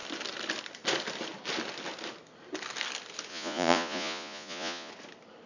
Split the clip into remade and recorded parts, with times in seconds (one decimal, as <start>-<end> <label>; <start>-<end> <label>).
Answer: 0.0-3.3 recorded; 3.3-4.9 remade; 4.9-5.5 recorded